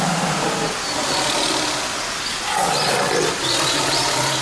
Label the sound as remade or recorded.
recorded